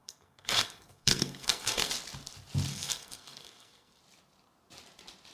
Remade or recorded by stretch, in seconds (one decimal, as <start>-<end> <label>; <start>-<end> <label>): 0.0-1.9 remade; 1.9-2.7 recorded; 2.7-4.0 remade; 4.0-5.3 recorded